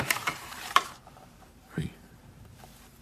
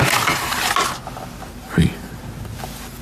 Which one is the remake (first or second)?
first